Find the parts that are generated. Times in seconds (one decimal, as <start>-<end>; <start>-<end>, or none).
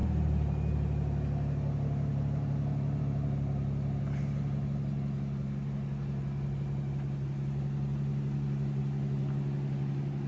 none